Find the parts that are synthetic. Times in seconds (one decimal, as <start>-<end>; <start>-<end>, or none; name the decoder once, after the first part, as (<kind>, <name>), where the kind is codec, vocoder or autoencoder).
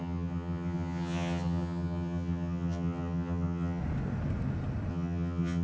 0.0-3.8 (vocoder, HiFi-GAN); 4.9-5.6